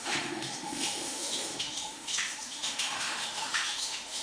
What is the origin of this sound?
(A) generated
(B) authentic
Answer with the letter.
A